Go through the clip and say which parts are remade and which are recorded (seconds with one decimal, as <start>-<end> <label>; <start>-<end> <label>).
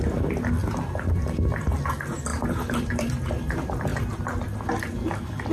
0.0-2.3 recorded; 2.3-3.1 remade; 3.1-5.5 recorded